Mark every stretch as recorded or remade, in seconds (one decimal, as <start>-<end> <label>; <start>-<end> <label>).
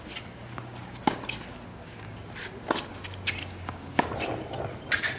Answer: 0.0-0.5 recorded; 0.5-1.0 remade; 1.0-1.7 recorded; 1.7-2.3 remade; 2.3-3.4 recorded; 3.4-4.1 remade; 4.1-5.2 recorded